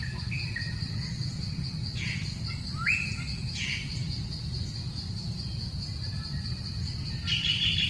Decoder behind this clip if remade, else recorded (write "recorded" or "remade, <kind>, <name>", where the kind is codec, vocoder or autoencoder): recorded